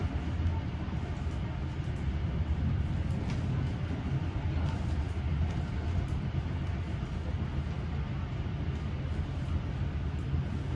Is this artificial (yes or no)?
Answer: no